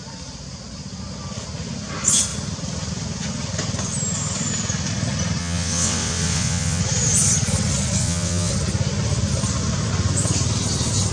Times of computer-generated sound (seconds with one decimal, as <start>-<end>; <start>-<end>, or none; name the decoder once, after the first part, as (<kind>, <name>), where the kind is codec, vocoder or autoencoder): 5.4-6.8 (vocoder, WaveNeXt); 8.0-8.5